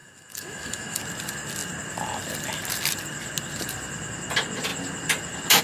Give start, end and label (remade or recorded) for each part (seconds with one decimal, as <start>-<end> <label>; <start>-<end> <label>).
0.0-1.0 remade; 1.0-5.6 recorded